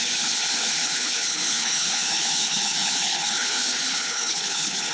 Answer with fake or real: fake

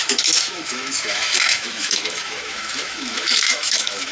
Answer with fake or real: fake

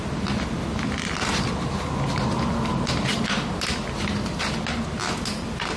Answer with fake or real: real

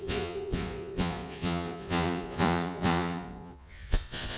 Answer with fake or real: fake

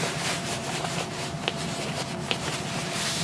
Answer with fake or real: fake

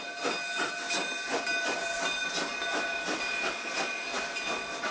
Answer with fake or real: real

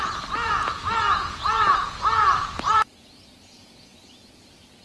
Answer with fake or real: fake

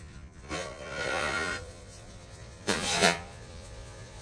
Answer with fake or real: fake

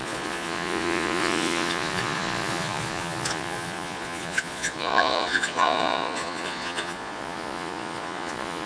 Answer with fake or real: fake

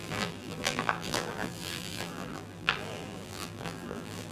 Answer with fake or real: fake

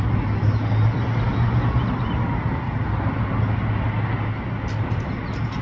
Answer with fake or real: real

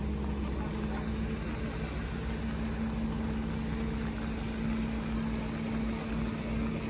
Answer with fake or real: real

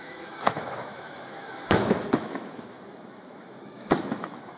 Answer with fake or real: fake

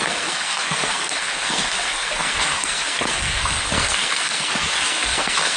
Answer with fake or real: fake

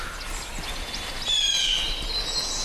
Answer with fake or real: real